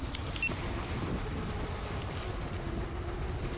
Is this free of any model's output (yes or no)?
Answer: yes